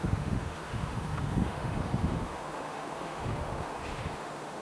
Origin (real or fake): fake